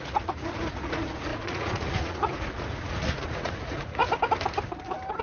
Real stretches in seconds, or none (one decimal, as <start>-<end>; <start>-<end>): 4.0-5.2